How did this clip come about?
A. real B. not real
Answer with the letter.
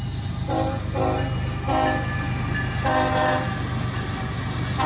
A